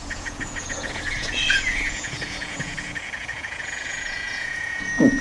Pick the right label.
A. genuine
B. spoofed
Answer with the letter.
B